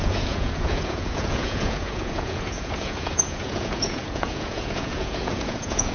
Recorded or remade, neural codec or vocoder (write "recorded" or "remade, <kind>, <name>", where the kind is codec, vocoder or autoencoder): remade, vocoder, Vocos